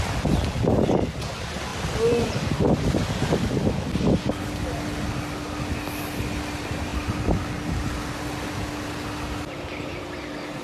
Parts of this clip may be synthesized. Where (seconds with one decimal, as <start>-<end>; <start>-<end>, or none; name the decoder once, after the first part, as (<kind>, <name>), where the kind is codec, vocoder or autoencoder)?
none